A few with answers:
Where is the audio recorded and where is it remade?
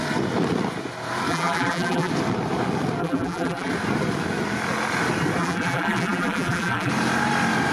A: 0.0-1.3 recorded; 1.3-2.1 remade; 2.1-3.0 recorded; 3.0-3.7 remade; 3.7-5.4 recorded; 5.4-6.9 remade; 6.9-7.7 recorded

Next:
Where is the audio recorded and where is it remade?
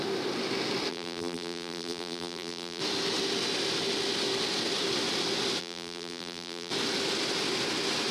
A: 0.0-0.9 recorded; 0.9-2.8 remade; 2.8-5.6 recorded; 5.6-6.7 remade; 6.7-8.1 recorded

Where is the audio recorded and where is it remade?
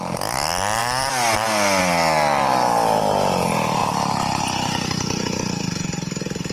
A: 0.0-0.8 recorded; 0.8-1.8 remade; 1.8-6.5 recorded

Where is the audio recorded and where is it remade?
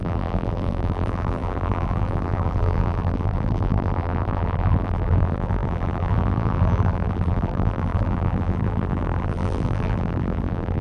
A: 0.0-10.8 remade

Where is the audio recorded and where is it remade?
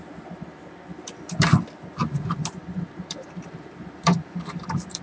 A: 0.0-2.0 recorded; 2.0-5.0 remade